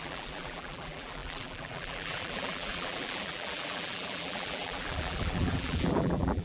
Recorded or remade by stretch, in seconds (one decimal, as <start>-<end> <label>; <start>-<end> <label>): 0.0-6.4 remade